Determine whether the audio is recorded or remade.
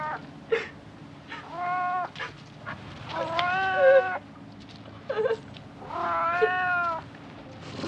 recorded